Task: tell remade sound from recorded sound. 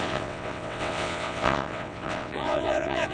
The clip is remade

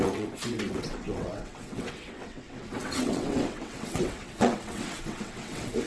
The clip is remade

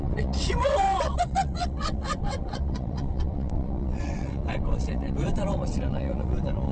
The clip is remade